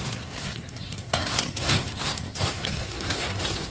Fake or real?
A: fake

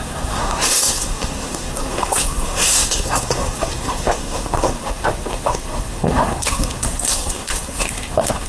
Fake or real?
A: fake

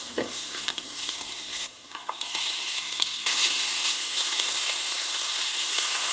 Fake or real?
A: fake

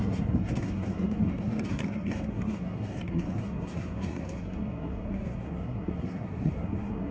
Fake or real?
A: fake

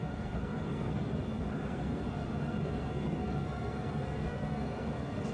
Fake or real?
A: fake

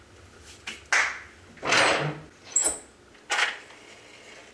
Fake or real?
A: real